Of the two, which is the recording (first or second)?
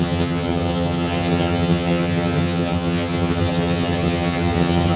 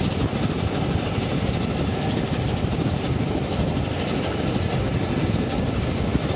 second